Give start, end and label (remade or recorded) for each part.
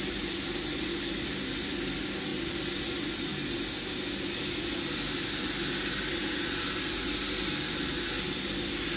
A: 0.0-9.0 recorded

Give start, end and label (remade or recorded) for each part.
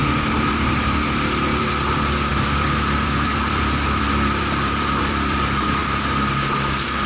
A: 0.0-0.5 recorded; 0.5-5.8 remade; 5.8-7.1 recorded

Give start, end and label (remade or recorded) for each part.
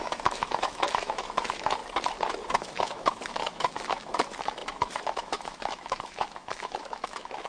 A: 0.0-1.8 remade; 1.8-2.5 recorded; 2.5-7.5 remade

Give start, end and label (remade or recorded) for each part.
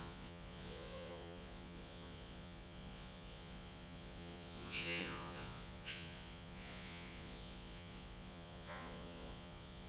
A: 0.0-9.9 remade